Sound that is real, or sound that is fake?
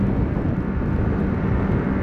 real